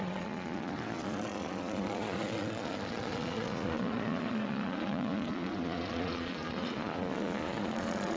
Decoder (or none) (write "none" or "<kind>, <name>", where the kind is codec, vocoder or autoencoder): vocoder, Vocos